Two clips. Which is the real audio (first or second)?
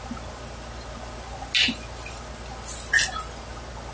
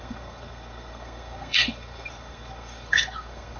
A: first